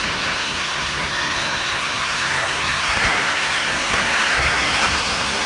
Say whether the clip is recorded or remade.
remade